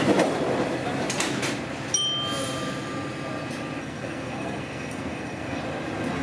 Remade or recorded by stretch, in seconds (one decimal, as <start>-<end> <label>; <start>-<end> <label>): 0.0-3.8 recorded; 3.8-5.6 remade; 5.6-6.2 recorded